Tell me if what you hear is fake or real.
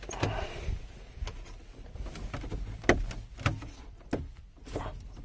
real